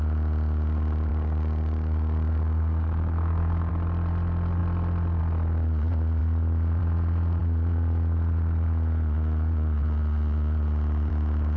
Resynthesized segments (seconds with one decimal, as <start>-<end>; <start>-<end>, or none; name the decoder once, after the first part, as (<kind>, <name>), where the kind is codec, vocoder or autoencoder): 1.1-3.7 (codec, DAC)